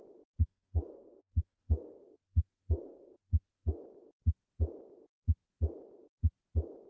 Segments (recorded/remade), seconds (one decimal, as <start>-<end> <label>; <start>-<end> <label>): 0.0-0.5 recorded; 0.5-3.8 remade; 3.8-6.9 recorded